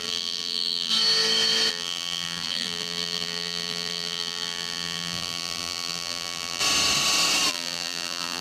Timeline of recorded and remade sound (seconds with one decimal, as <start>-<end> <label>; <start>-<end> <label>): 0.0-0.9 remade; 0.9-1.7 recorded; 1.7-6.6 remade; 6.6-7.5 recorded; 7.5-8.4 remade